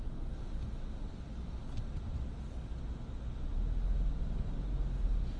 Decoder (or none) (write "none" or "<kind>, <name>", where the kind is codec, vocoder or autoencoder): none